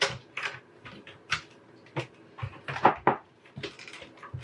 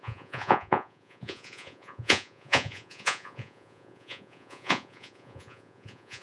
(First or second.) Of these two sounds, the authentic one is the first